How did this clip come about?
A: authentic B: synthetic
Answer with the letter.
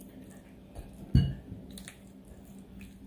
A